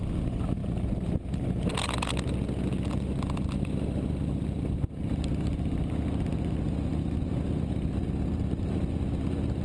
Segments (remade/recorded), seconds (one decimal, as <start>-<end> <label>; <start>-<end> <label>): 0.0-9.6 recorded